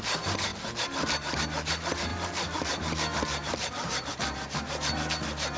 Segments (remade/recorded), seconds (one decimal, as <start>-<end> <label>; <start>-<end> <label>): 0.0-0.5 recorded; 0.5-1.4 remade; 1.4-2.1 recorded; 2.1-5.1 remade; 5.1-5.6 recorded